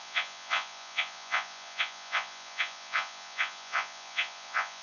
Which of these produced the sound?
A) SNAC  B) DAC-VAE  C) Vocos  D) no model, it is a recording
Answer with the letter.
C